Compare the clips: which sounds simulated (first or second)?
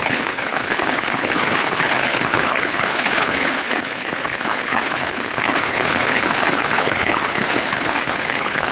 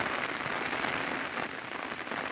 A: first